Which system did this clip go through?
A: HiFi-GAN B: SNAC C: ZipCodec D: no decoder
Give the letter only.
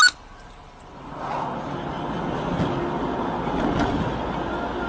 D